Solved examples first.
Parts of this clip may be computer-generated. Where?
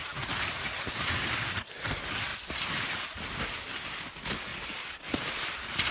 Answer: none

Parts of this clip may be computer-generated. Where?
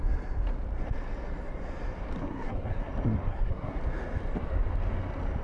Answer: 2.2-2.9; 3.3-3.8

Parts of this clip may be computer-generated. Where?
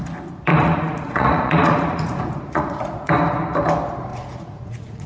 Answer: 0.5-3.1; 4.1-5.1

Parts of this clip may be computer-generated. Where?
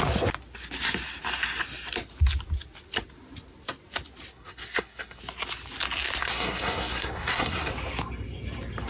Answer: 4.3-5.2; 6.2-7.7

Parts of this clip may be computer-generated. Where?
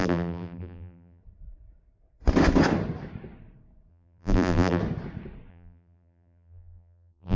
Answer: 0.0-1.2; 3.9-4.8; 5.5-7.4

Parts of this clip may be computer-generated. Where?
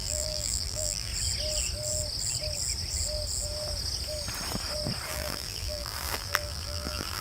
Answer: 0.0-1.1; 5.1-7.2